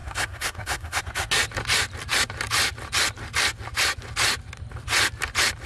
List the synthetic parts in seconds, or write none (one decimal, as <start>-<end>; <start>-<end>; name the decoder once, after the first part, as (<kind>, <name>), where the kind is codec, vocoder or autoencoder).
0.0-1.0 (codec, SNAC)